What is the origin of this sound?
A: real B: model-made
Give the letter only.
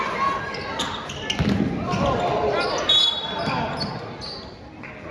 A